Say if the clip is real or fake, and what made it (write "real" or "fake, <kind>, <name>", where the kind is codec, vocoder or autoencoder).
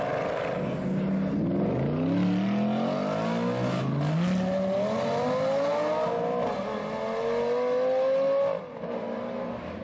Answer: real